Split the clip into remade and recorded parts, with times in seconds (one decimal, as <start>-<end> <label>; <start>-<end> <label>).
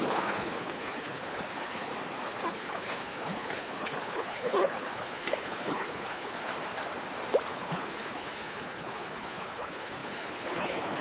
0.0-1.9 remade; 1.9-2.5 recorded; 2.5-6.5 remade; 6.5-7.5 recorded; 7.5-11.0 remade